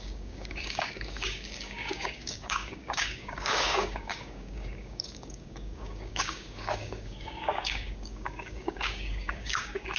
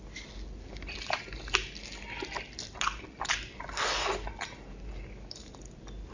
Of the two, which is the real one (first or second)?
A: second